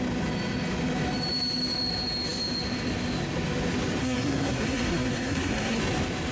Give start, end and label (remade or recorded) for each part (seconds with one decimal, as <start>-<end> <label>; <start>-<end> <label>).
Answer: 0.0-4.0 recorded; 4.0-5.8 remade; 5.8-6.3 recorded